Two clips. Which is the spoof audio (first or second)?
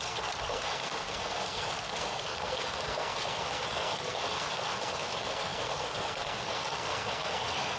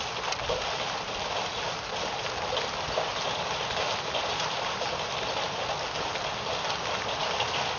first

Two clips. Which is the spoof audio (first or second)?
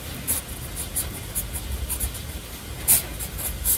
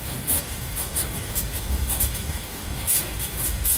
second